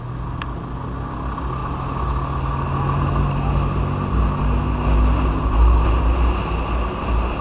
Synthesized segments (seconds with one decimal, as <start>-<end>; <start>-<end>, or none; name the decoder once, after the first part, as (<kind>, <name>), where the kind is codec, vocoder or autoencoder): none